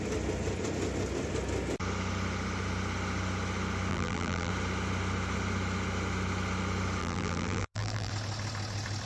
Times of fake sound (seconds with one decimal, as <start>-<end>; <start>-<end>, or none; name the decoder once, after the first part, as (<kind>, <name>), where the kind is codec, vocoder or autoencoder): 3.9-4.5 (vocoder, BigVGAN v2); 7.0-8.1